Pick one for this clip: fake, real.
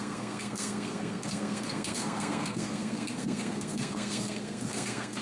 fake